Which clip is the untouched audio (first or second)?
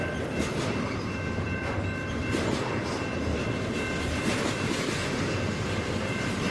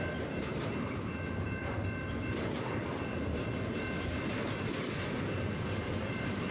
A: first